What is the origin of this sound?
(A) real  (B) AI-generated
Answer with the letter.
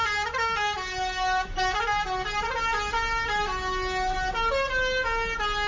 A